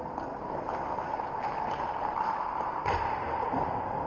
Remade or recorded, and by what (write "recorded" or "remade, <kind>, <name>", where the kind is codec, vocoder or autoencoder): recorded